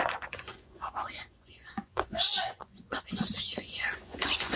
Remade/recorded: remade